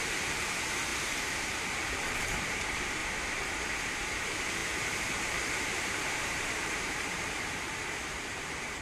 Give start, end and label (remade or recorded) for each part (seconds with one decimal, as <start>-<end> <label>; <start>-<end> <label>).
0.0-3.0 remade; 3.0-3.8 recorded; 3.8-8.8 remade